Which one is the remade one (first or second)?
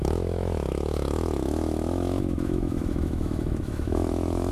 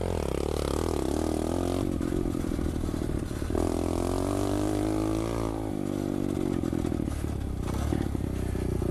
first